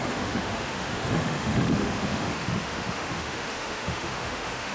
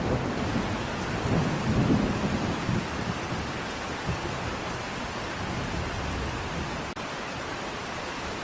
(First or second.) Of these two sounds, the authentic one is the second